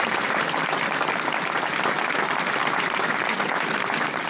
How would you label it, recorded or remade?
recorded